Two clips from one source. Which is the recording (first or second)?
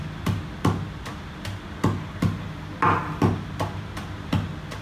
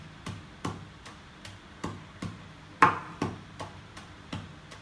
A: first